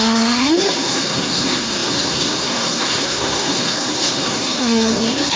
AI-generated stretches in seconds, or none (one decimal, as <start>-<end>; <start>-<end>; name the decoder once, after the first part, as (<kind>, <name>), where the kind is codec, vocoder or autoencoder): 0.0-5.4 (codec, SNAC)